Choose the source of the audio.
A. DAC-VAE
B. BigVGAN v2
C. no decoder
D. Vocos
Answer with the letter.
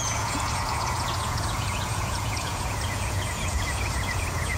D